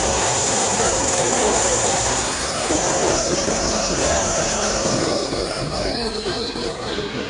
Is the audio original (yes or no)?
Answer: no